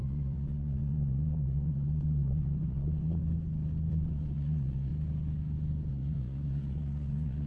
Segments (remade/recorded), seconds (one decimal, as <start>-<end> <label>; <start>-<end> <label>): 0.0-3.2 remade; 3.2-3.9 recorded; 3.9-4.9 remade; 4.9-5.9 recorded; 5.9-7.5 remade